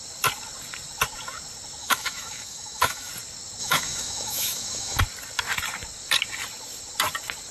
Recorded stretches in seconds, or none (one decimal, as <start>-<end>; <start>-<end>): 0.0-1.8; 3.1-3.6; 5.0-7.5